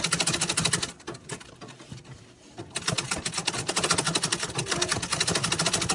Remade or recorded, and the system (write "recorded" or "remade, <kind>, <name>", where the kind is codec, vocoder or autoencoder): recorded